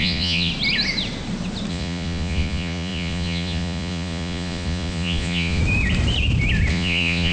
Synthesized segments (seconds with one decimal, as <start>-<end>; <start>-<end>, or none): 0.0-0.5; 1.7-5.6; 6.7-7.3